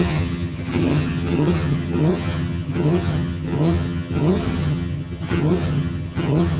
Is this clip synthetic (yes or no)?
yes